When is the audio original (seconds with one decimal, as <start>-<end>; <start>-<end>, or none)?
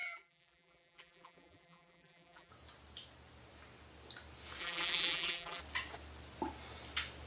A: 2.5-4.6; 5.6-7.3